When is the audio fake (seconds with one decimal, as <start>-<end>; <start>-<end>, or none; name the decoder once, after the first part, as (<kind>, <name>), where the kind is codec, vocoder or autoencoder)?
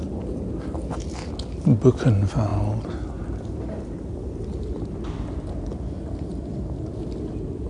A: none